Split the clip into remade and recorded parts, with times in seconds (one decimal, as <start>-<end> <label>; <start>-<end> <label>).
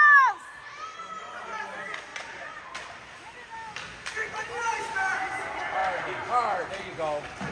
0.0-2.1 recorded; 2.1-2.7 remade; 2.7-7.5 recorded